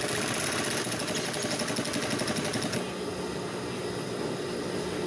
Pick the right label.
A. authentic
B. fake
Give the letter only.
A